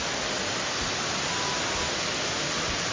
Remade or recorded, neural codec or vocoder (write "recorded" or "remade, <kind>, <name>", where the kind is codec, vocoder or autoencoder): recorded